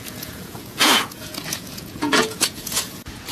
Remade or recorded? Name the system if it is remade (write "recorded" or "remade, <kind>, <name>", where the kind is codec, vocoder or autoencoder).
remade, vocoder, Vocos